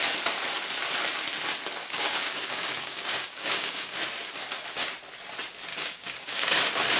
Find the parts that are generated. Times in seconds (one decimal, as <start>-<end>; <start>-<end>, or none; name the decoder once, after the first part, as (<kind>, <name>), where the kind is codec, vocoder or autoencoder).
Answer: 1.8-4.0 (codec, DAC); 5.7-6.5